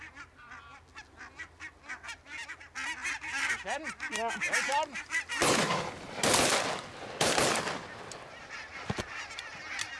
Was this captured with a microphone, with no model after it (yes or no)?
yes